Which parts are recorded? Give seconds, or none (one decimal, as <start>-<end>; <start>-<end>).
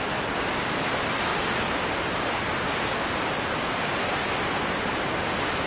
0.0-1.3; 4.2-5.7